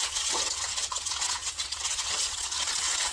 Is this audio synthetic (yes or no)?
yes